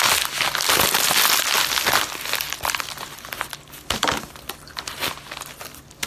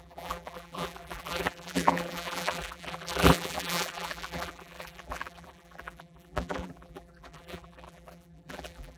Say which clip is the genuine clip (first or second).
first